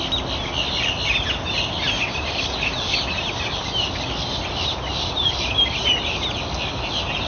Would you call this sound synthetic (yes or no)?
no